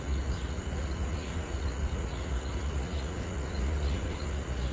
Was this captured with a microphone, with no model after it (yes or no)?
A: no